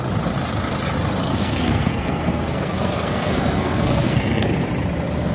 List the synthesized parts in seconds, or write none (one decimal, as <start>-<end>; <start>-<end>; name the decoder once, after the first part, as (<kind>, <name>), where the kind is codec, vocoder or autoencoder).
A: 1.3-4.5 (codec, SNAC)